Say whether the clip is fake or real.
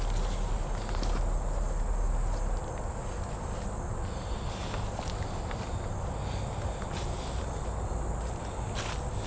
real